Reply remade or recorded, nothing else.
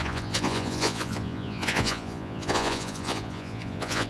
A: remade